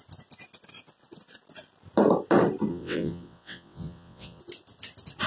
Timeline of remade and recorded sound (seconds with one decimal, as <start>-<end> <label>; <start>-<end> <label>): 0.0-2.7 recorded; 2.7-4.4 remade; 4.4-5.3 recorded